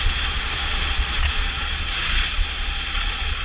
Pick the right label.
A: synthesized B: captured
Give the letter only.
A